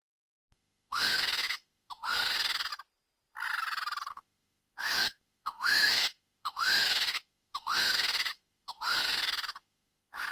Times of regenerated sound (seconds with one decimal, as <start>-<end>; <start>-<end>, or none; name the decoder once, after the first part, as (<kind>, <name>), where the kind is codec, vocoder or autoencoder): 0.0-2.7 (autoencoder, DAC-VAE); 4.1-10.3